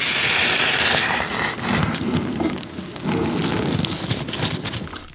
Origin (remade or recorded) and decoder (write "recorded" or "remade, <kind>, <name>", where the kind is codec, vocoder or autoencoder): recorded